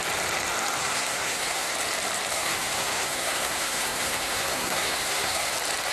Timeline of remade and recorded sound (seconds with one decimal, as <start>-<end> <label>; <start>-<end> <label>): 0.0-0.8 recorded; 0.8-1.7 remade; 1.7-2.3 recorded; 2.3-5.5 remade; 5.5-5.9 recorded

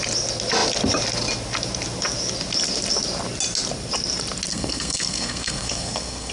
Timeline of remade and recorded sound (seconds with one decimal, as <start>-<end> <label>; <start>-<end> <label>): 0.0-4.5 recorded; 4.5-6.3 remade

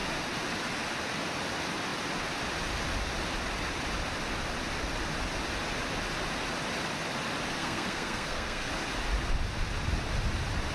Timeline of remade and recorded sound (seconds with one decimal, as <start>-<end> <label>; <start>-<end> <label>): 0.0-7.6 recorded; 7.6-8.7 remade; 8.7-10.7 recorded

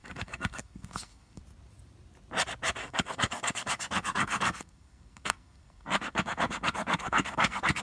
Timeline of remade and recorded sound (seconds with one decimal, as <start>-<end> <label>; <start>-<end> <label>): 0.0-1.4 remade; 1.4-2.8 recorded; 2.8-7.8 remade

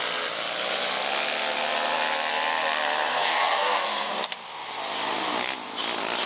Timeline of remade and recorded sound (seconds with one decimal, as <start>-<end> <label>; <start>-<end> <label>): 0.0-3.1 recorded; 3.1-4.1 remade; 4.1-6.3 recorded